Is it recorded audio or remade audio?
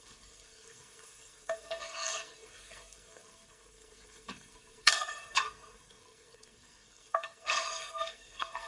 remade